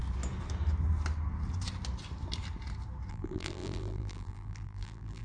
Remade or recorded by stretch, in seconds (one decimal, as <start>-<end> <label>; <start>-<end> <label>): 0.0-3.1 recorded; 3.1-5.2 remade